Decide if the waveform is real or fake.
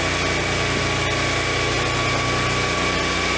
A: real